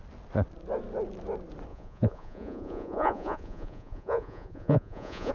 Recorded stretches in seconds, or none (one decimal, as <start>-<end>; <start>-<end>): 0.0-1.7